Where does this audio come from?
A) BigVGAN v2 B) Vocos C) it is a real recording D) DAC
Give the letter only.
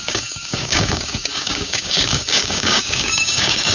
D